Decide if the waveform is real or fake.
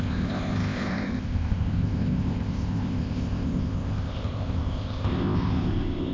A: fake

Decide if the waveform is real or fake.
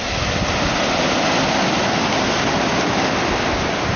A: real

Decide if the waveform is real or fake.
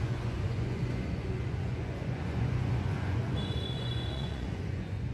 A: fake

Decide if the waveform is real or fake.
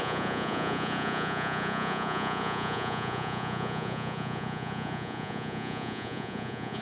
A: fake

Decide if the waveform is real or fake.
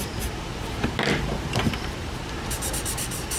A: real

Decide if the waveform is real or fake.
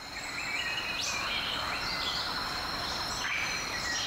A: real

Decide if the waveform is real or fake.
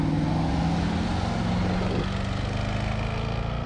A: real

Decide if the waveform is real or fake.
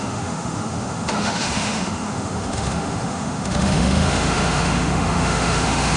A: fake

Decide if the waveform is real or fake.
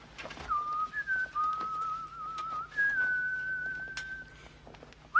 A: real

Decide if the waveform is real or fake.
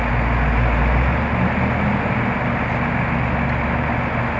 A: real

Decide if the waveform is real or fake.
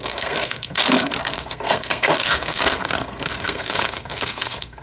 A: fake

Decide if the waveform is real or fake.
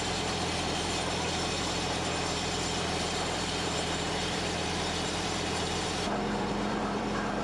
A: fake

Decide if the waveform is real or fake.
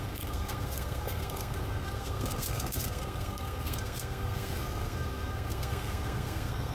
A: fake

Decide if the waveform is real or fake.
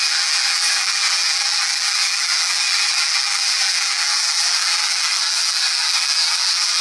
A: fake